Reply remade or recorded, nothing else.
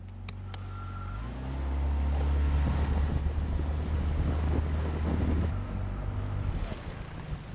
recorded